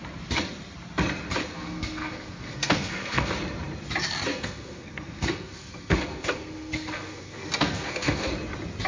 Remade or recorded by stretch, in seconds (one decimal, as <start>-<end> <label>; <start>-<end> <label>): 0.0-1.4 recorded; 1.4-3.3 remade; 3.3-4.3 recorded; 4.3-8.3 remade; 8.3-8.9 recorded

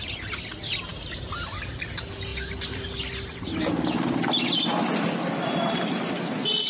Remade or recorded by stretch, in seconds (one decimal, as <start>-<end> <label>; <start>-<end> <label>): 0.0-6.7 recorded

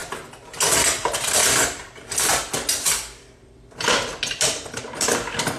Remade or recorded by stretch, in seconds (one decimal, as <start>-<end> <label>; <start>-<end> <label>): 0.0-0.9 recorded; 0.9-5.6 remade

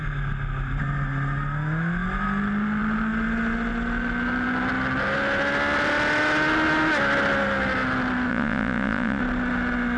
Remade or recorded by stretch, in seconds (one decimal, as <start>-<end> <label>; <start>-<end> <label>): 0.0-8.3 recorded; 8.3-9.2 remade; 9.2-10.0 recorded

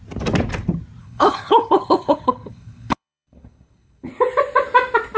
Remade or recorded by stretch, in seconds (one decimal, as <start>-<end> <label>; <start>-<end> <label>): 0.0-1.0 recorded; 1.0-4.1 remade; 4.1-5.2 recorded

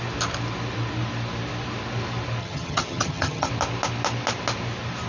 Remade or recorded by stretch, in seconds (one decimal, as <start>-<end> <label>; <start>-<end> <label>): 0.0-2.4 recorded; 2.4-3.5 remade; 3.5-5.1 recorded

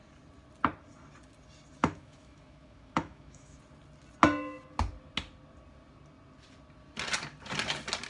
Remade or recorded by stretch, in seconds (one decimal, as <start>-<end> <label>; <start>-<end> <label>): 0.0-1.8 recorded; 1.8-3.6 remade; 3.6-8.1 recorded

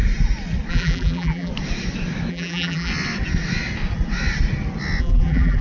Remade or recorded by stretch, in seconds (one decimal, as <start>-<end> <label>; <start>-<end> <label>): 0.0-0.7 recorded; 0.7-1.5 remade; 1.5-2.3 recorded; 2.3-2.9 remade; 2.9-5.0 recorded; 5.0-5.6 remade